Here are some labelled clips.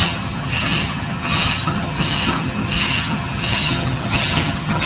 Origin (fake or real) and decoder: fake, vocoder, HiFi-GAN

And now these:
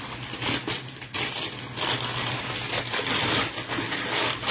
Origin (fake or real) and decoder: real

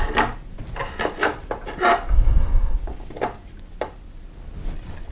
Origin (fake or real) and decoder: real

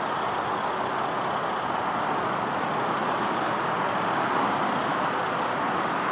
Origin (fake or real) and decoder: real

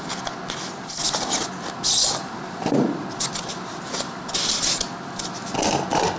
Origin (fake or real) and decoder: real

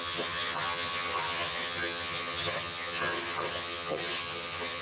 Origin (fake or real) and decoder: fake, vocoder, HiFi-GAN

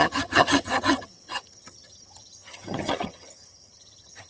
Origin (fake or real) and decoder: fake, vocoder, HiFi-GAN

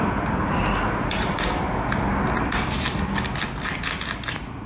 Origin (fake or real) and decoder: real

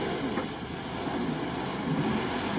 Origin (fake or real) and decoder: real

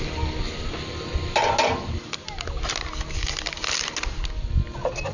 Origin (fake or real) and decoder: real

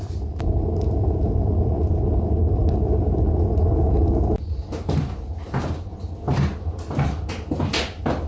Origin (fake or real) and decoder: real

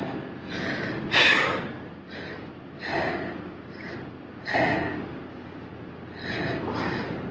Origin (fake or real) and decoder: real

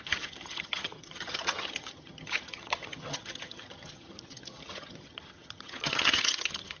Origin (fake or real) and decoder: fake, vocoder, HiFi-GAN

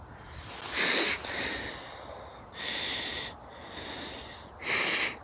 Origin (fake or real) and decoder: real